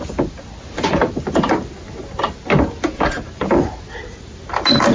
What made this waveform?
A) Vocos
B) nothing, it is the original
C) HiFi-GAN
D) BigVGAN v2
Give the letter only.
B